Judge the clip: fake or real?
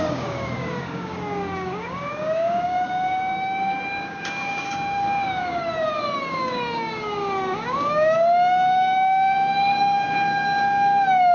fake